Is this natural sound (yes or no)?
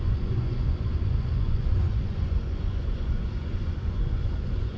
no